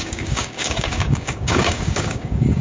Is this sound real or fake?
fake